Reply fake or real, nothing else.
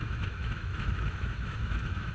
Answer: fake